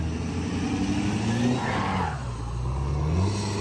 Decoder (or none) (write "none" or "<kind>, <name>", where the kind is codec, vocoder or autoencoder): none